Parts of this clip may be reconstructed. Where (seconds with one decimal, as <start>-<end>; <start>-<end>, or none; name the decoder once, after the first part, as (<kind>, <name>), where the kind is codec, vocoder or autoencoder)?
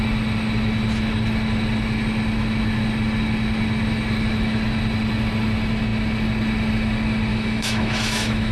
7.3-8.5 (autoencoder, DAC-VAE)